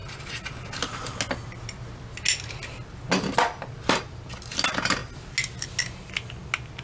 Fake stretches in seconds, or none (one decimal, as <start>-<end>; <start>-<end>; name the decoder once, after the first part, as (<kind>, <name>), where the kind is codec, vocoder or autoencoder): none